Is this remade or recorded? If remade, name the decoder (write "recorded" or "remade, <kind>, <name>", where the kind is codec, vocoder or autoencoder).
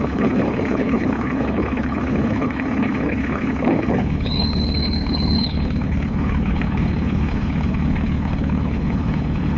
remade, codec, HILCodec